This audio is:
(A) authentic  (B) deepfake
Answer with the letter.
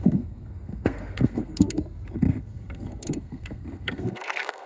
B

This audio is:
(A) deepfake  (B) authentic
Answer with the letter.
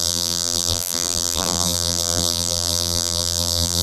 A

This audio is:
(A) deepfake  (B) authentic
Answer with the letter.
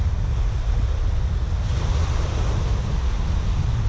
B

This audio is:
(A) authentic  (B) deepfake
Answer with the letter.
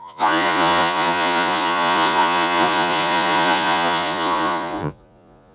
B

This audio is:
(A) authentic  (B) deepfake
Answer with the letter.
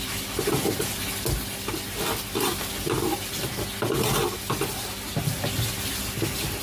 A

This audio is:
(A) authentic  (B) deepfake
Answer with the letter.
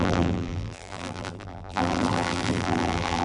B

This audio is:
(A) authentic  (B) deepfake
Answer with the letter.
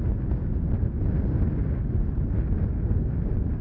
A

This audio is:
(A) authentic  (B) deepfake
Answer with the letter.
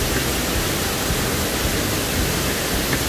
A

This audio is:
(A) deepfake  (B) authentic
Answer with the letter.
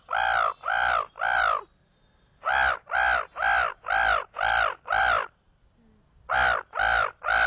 B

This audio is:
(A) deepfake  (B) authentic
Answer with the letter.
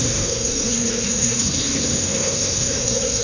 A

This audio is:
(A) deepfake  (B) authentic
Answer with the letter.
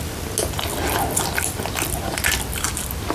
B